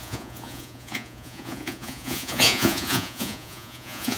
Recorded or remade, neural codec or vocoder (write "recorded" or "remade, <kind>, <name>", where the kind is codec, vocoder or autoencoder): remade, vocoder, Vocos